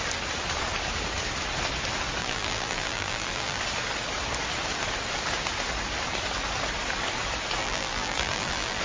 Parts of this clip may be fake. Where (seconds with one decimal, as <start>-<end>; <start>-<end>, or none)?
2.2-3.6; 7.6-8.8